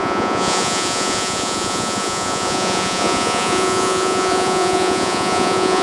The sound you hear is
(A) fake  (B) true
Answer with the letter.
A